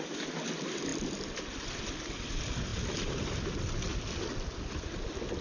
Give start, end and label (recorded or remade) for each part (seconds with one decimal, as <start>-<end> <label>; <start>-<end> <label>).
0.0-5.4 recorded